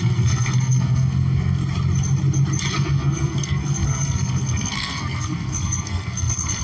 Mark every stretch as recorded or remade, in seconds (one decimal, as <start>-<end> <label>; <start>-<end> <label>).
0.0-1.6 remade; 1.6-2.7 recorded; 2.7-6.6 remade